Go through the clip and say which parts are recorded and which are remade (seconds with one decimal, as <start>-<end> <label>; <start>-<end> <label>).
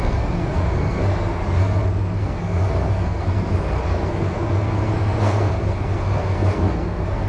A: 0.0-7.3 remade